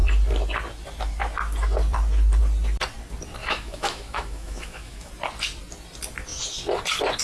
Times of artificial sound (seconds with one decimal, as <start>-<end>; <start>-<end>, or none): 3.4-5.1